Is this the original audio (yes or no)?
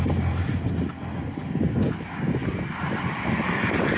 yes